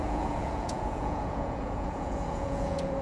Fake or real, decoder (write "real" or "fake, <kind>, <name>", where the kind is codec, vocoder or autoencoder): fake, vocoder, Vocos